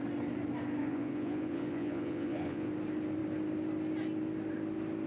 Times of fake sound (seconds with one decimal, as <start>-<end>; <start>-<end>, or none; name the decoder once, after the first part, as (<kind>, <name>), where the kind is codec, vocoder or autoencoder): 0.8-2.7 (vocoder, Vocos)

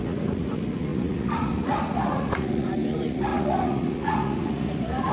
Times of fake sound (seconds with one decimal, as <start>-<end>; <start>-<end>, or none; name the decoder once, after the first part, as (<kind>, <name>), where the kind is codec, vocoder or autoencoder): 0.0-5.1 (vocoder, Vocos)

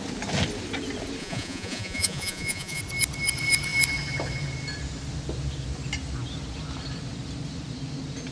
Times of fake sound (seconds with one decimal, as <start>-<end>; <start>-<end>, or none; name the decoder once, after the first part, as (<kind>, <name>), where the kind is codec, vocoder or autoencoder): 1.2-2.8 (vocoder, Vocos)

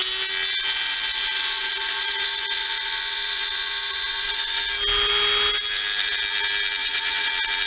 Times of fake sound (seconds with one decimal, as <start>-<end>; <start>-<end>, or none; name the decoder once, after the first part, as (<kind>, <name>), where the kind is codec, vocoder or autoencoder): 1.1-4.6 (vocoder, Vocos); 6.8-7.3

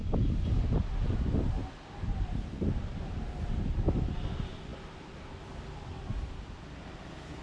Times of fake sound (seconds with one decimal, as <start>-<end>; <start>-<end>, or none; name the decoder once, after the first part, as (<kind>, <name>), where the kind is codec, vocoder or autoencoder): none

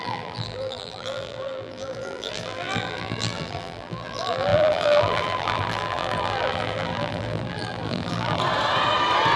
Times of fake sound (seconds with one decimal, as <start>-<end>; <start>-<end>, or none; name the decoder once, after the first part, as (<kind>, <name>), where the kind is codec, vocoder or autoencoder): 0.0-8.4 (vocoder, BigVGAN v2)

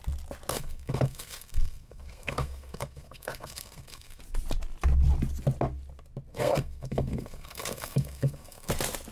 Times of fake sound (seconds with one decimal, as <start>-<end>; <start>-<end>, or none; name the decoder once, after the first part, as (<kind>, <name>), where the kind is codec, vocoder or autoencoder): 0.5-4.2 (codec, SNAC); 6.3-8.7